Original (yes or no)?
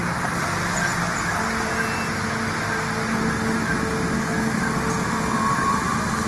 yes